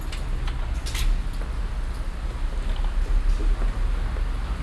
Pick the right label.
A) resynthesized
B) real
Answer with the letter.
B